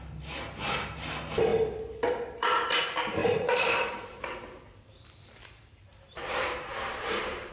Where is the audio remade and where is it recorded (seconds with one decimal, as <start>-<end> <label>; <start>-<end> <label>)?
0.0-3.2 recorded; 3.2-7.5 remade